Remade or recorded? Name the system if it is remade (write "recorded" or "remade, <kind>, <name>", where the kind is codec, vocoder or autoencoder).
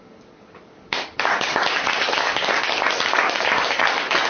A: remade, codec, DAC